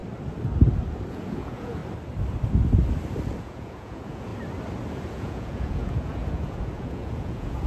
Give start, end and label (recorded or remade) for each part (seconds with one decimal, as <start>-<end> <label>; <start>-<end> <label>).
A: 0.0-1.1 recorded; 1.1-1.8 remade; 1.8-3.4 recorded; 3.4-4.3 remade; 4.3-5.1 recorded; 5.1-7.7 remade